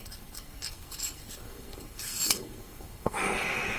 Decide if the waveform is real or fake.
fake